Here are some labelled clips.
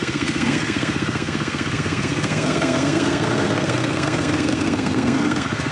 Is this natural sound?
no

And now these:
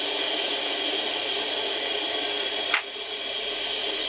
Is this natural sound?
yes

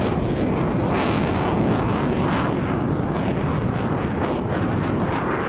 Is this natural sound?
yes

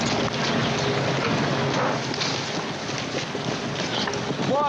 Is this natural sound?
yes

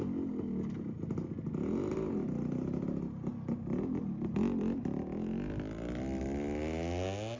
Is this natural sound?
yes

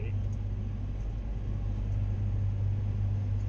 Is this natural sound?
yes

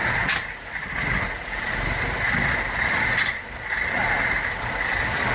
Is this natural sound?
yes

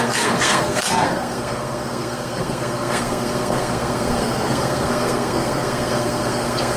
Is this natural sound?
no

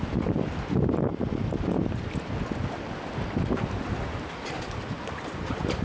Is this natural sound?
yes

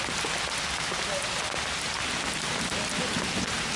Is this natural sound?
yes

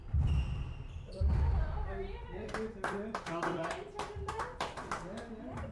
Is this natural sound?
no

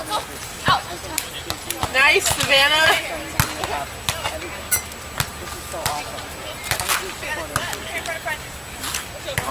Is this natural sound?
yes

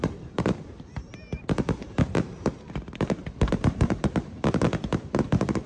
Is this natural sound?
no